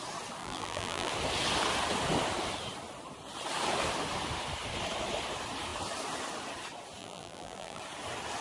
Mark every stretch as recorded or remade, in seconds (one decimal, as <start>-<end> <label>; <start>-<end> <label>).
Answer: 0.0-0.4 recorded; 0.4-1.1 remade; 1.1-7.0 recorded; 7.0-7.8 remade; 7.8-8.4 recorded